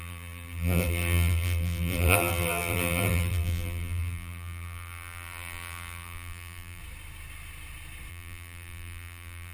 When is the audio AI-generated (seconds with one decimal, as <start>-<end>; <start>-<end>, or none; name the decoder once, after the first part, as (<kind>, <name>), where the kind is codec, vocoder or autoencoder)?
0.0-6.8 (vocoder, BigVGAN v2); 8.1-9.5

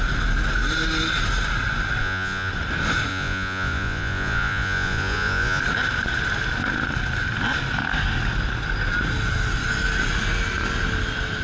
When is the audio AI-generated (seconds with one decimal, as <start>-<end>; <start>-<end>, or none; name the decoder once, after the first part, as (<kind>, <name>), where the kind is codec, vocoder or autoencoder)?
2.0-2.5 (vocoder, Vocos); 3.1-5.6

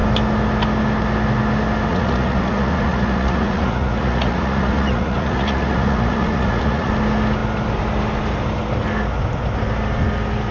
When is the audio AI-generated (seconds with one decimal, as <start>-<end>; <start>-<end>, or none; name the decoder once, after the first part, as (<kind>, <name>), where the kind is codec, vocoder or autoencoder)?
1.9-6.9 (vocoder, Vocos)

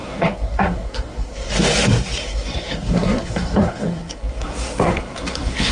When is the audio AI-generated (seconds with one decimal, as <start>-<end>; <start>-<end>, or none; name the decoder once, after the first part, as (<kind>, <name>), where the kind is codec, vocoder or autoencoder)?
0.0-1.5 (codec, SNAC); 2.2-5.7

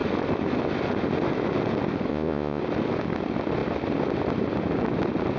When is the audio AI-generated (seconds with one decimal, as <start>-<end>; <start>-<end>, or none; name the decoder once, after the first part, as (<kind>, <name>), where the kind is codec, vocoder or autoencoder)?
2.1-2.6 (vocoder, Vocos)

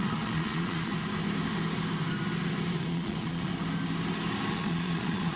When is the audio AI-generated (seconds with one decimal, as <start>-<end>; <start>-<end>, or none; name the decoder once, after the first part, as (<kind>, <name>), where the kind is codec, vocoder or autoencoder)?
0.0-0.9 (vocoder, Vocos); 2.7-3.5; 4.5-5.4